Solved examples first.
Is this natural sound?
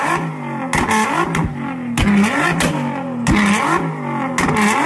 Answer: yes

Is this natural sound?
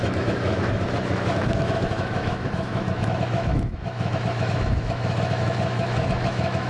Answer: no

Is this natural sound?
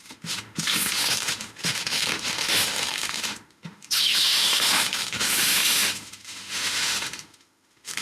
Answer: no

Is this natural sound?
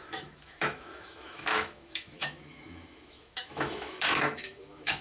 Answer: no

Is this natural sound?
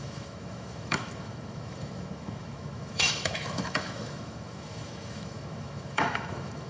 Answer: no